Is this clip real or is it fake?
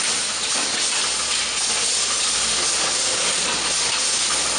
real